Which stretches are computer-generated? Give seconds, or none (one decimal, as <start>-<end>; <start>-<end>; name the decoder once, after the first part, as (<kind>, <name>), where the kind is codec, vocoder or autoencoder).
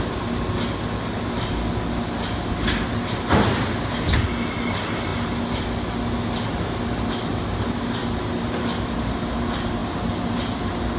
none